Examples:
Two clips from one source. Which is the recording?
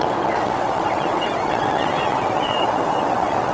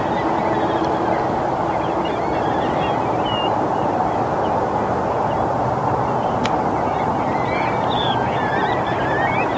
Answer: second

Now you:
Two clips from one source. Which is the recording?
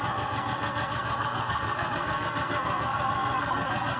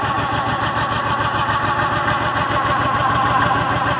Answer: second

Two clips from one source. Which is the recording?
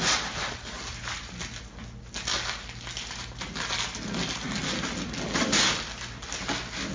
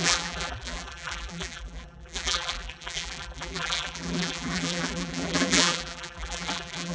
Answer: first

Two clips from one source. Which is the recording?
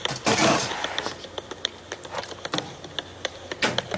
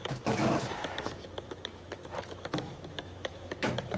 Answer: first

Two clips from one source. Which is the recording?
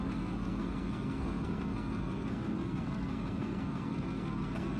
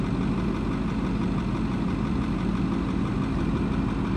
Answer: second